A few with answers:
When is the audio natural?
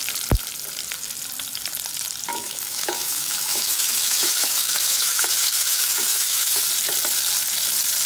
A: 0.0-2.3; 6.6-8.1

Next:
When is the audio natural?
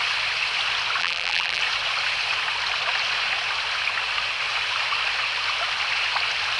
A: 0.0-1.0; 1.6-6.6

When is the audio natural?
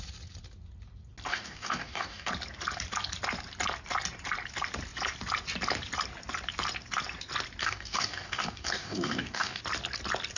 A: 0.0-1.3; 2.3-7.6; 9.6-10.4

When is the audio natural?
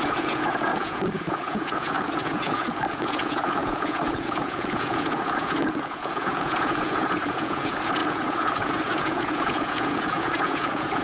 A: none